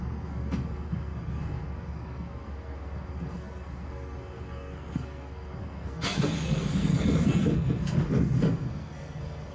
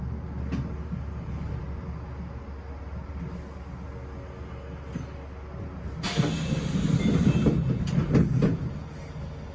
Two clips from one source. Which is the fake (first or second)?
first